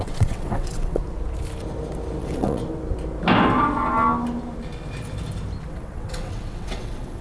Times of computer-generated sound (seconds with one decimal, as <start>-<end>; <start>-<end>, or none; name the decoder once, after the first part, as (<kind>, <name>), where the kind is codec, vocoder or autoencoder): 0.0-1.0 (vocoder, WaveNeXt); 2.2-2.6; 5.7-7.2